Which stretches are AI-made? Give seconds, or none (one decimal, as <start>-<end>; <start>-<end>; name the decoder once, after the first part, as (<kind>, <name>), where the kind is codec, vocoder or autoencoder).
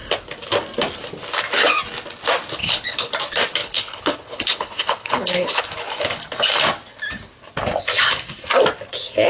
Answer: 2.6-3.1 (codec, HILCodec); 3.6-5.6